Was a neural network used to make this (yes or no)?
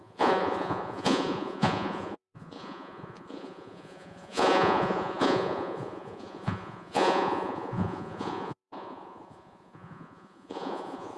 yes